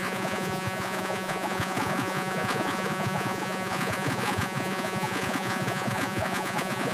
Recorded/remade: remade